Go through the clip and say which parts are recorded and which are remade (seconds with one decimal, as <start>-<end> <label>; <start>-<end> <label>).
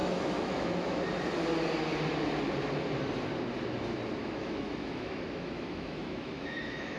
0.0-1.0 remade; 1.0-4.2 recorded; 4.2-7.0 remade